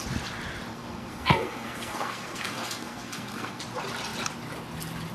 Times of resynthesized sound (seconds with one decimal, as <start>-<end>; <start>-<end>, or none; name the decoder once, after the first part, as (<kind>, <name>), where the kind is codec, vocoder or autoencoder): 0.7-3.6 (codec, SNAC)